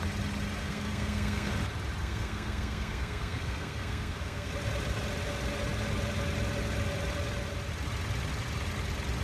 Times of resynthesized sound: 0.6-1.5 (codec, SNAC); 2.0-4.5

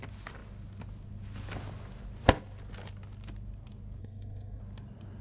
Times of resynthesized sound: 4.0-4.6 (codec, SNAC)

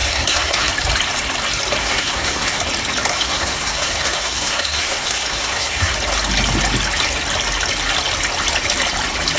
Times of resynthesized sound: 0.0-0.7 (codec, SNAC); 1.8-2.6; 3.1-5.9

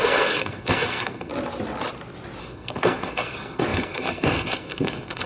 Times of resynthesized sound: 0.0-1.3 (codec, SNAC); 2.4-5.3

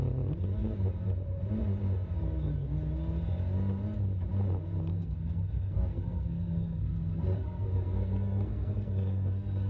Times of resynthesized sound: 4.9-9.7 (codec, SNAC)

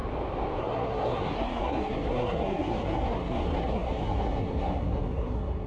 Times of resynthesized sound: 0.6-5.7 (codec, SNAC)

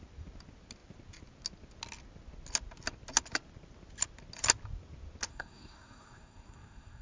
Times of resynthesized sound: 5.3-7.0 (codec, SNAC)